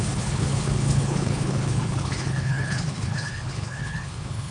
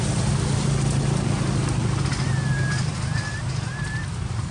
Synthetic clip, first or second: first